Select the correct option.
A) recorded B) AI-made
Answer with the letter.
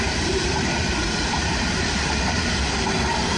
B